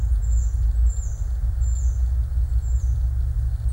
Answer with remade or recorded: recorded